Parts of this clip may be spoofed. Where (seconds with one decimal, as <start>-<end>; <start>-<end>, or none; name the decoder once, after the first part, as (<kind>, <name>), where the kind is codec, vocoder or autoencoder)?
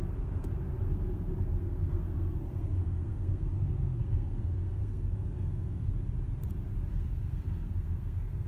0.0-5.9 (codec, SNAC); 6.9-8.5